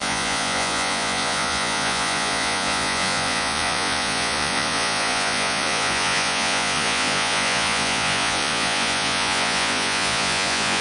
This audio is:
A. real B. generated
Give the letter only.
B